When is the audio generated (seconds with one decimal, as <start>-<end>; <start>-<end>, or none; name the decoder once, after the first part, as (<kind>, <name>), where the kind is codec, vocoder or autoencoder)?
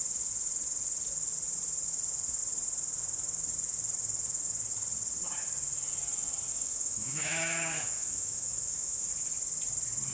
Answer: 6.5-9.1 (autoencoder, DAC-VAE)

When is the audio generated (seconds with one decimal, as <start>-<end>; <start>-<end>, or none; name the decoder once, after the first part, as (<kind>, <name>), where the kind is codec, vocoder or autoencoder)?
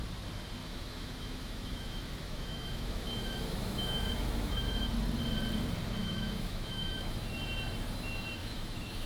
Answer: 0.6-4.9 (autoencoder, DAC-VAE); 6.0-7.2; 8.4-9.1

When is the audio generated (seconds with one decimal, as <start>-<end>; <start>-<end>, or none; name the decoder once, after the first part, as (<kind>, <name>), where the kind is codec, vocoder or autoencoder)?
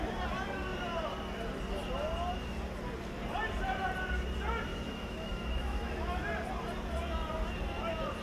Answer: 4.7-6.2 (autoencoder, DAC-VAE)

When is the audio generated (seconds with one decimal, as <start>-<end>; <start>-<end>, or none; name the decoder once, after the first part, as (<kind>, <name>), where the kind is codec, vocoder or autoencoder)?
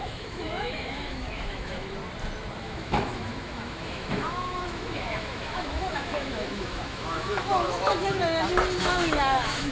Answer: 0.0-2.0 (autoencoder, DAC-VAE); 2.6-8.2; 8.8-9.7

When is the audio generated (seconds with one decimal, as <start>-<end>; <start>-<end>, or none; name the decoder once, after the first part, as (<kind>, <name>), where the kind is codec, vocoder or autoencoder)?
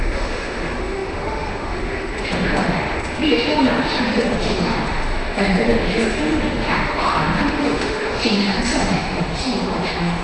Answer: 0.0-10.2 (autoencoder, DAC-VAE)